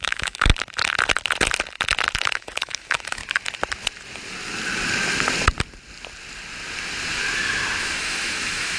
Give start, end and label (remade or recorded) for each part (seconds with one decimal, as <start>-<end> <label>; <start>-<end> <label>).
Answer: 0.0-0.5 remade; 0.5-2.3 recorded; 2.3-3.2 remade; 3.2-7.8 recorded; 7.8-8.8 remade